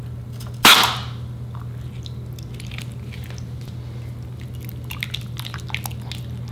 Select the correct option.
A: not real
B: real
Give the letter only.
B